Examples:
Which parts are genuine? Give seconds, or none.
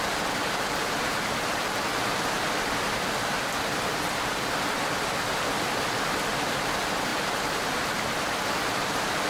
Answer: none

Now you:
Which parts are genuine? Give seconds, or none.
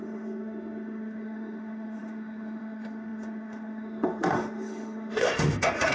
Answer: none